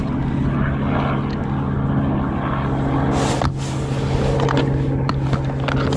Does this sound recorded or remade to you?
recorded